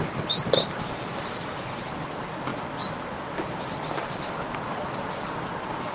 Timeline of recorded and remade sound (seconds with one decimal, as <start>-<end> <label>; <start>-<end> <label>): 0.0-5.9 recorded